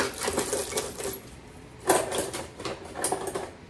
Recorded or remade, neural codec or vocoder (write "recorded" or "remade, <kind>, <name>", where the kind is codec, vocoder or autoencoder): recorded